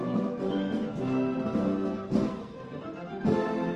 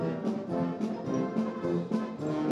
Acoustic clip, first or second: second